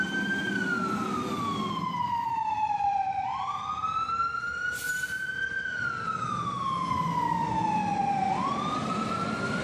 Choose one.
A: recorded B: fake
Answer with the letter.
A